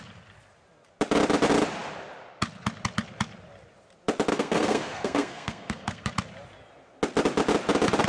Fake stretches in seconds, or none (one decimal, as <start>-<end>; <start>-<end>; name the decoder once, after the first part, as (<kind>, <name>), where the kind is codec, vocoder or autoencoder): 4.3-6.1 (codec, SNAC)